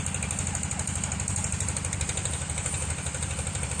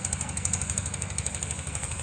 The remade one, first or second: second